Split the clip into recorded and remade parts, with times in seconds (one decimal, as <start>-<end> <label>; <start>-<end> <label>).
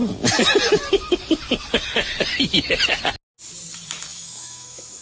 0.0-4.1 recorded; 4.1-5.0 remade